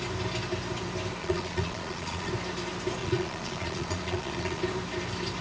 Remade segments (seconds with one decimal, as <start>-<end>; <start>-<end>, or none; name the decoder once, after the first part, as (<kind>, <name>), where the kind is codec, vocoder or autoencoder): 1.2-2.3 (vocoder, Vocos); 3.0-4.6